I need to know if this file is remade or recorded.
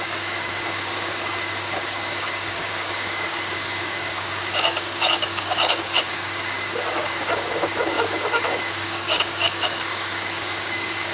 remade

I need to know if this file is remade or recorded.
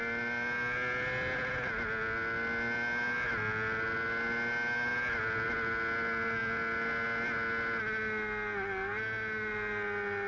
recorded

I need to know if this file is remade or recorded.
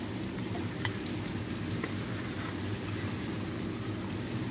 recorded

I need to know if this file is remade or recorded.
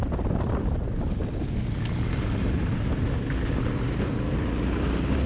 recorded